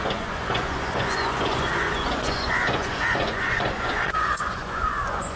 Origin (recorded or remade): remade